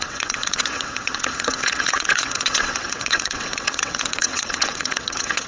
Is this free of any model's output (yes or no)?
no